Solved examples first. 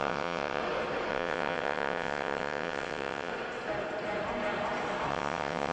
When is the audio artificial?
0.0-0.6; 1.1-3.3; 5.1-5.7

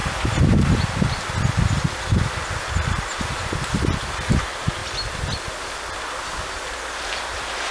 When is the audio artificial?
none

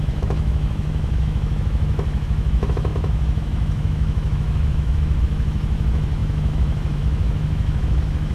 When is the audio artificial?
0.0-8.3

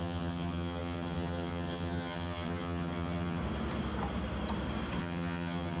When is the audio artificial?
0.0-3.4; 5.0-5.8

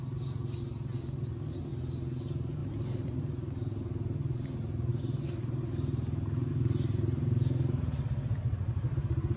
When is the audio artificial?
2.6-3.2

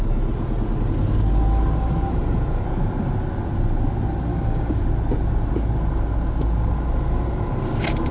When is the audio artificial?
4.3-4.8